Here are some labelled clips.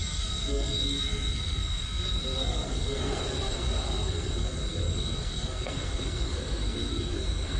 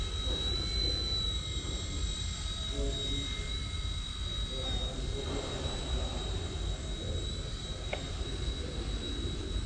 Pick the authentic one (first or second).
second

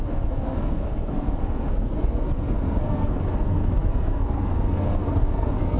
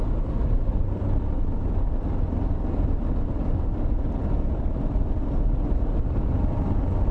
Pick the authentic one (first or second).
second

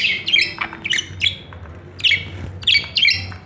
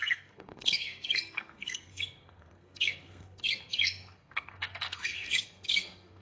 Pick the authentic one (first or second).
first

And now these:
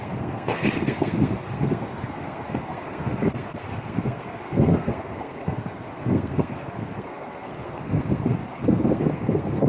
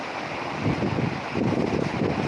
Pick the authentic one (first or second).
second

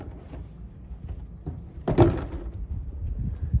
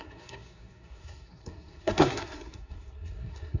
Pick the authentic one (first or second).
first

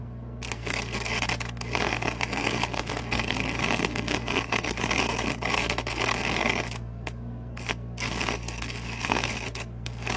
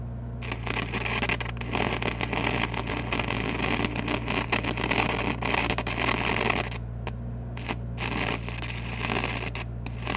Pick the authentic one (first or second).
second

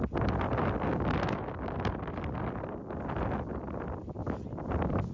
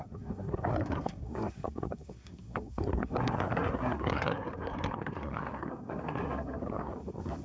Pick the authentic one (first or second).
first